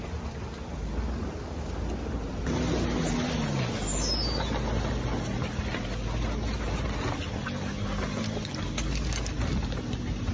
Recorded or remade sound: recorded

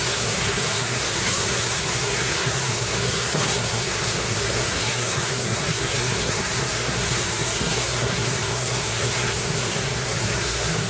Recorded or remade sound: remade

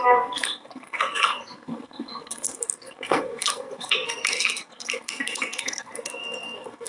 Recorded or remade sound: remade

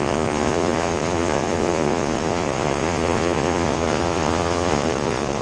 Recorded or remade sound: remade